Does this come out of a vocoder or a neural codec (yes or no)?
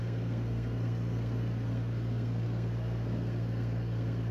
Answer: yes